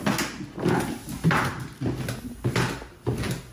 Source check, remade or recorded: recorded